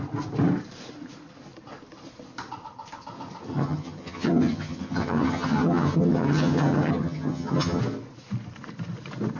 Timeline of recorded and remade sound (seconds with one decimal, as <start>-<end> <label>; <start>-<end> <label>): 0.0-3.5 recorded; 3.5-7.8 remade; 7.8-9.4 recorded